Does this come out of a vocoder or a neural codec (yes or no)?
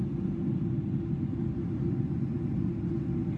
no